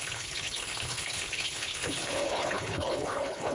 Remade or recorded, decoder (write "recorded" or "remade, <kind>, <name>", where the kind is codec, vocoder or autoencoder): remade, codec, HILCodec